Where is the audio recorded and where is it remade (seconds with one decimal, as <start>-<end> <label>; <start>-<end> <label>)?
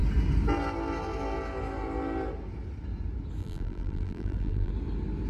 0.0-3.4 recorded; 3.4-4.7 remade; 4.7-5.3 recorded